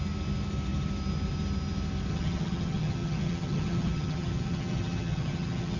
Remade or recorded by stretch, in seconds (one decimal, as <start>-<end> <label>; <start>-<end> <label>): 0.0-2.1 recorded; 2.1-5.8 remade